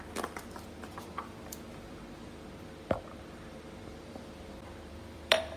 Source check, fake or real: fake